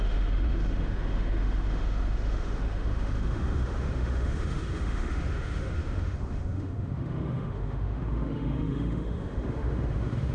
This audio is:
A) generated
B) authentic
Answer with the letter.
A